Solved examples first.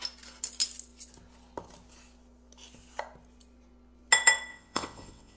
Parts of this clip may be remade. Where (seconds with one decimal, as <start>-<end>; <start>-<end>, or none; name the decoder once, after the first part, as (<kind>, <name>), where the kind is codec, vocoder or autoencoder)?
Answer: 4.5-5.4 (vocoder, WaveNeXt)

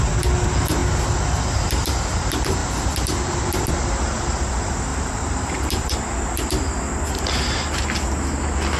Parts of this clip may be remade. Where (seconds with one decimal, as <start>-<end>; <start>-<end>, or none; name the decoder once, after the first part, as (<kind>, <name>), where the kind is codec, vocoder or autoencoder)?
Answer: 4.9-6.0 (vocoder, BigVGAN v2)

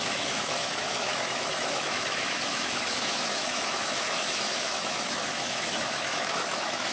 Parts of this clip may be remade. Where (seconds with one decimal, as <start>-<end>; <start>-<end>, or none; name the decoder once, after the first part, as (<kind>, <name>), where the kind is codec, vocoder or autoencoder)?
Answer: 0.0-6.9 (autoencoder, DAC-VAE)

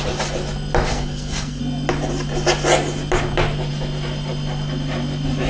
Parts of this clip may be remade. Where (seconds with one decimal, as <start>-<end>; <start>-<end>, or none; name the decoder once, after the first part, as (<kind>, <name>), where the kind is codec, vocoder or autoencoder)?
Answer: 0.9-1.6 (codec, SNAC)

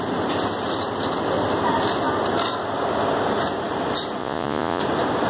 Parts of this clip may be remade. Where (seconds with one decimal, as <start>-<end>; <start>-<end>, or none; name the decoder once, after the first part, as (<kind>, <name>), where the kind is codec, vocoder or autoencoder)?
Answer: 4.2-4.8 (vocoder, Vocos)

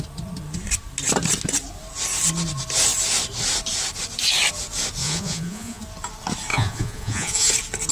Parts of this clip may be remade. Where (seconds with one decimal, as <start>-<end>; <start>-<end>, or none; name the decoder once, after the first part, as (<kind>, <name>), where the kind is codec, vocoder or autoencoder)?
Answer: 5.0-5.8 (vocoder, Vocos); 6.5-7.5